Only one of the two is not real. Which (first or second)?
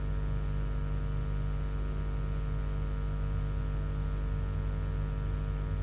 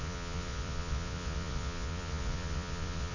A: second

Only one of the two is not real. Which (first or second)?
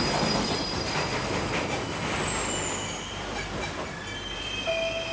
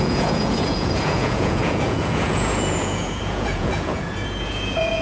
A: second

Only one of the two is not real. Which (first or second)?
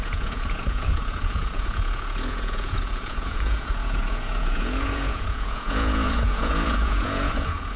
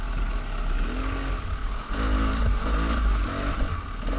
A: first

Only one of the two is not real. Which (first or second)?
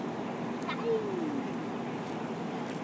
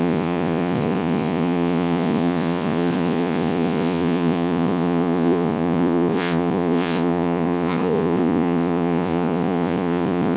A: second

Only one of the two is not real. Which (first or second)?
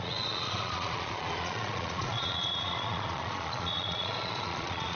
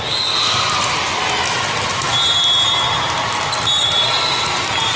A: first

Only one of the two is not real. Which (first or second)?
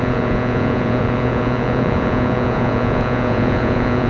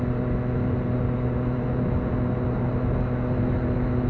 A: first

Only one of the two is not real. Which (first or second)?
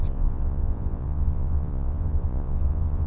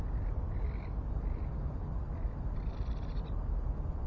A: first